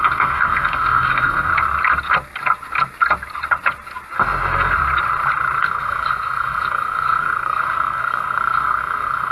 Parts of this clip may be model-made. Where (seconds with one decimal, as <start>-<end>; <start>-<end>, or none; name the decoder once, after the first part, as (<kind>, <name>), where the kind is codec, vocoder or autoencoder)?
0.0-1.5 (codec, SNAC); 5.6-9.3